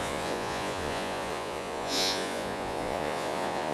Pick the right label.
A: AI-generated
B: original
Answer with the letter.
A